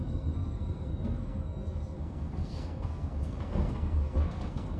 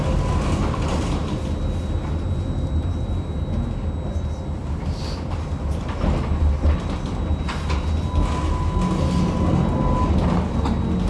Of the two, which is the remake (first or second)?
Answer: first